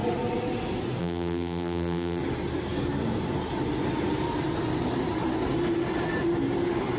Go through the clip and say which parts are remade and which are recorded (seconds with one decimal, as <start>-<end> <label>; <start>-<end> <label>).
0.0-1.0 recorded; 1.0-2.2 remade; 2.2-7.0 recorded